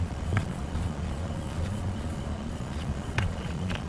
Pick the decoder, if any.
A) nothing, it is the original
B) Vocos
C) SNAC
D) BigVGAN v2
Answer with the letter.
B